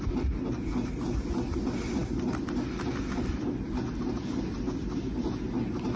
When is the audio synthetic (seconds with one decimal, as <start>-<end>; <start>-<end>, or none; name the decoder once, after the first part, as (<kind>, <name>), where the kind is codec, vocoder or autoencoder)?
none